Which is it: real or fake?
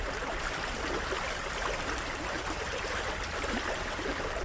real